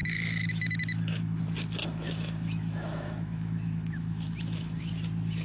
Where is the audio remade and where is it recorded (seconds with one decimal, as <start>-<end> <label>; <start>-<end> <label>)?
0.0-1.4 remade; 1.4-1.8 recorded; 1.8-4.9 remade; 4.9-5.4 recorded